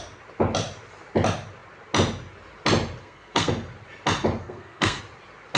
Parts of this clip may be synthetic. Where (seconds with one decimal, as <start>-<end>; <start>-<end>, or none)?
3.0-3.5; 4.4-5.0